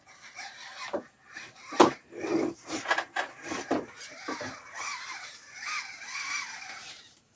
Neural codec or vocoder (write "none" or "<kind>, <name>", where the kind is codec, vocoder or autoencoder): vocoder, BigVGAN v2